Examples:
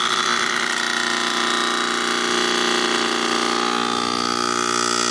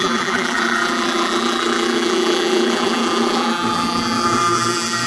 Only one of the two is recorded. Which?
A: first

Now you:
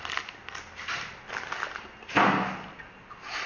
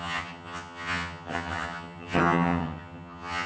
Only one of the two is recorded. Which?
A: first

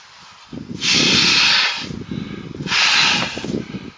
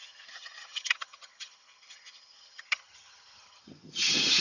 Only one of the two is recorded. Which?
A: first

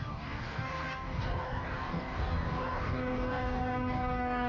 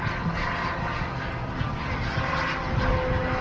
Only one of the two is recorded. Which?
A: second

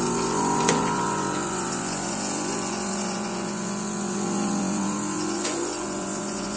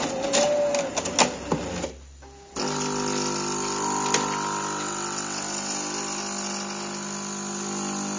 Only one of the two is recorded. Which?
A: second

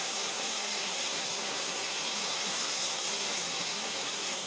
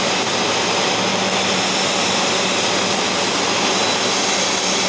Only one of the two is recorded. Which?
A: second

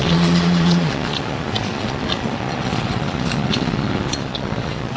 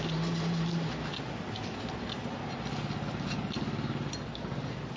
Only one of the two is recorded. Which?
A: second